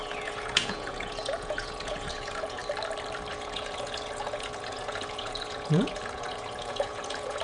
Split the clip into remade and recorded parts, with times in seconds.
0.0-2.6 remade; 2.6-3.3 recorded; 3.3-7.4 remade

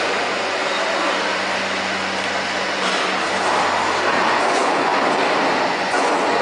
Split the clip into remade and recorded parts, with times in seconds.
0.0-0.6 remade; 0.6-4.3 recorded; 4.3-4.9 remade; 4.9-5.7 recorded; 5.7-6.4 remade

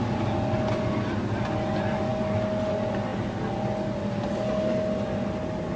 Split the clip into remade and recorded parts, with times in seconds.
0.0-5.8 recorded

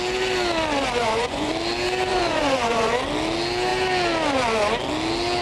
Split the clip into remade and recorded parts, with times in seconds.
0.0-1.0 recorded; 1.0-1.5 remade; 1.5-2.1 recorded; 2.1-2.9 remade; 2.9-5.4 recorded